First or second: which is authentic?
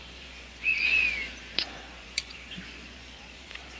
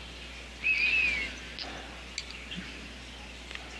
second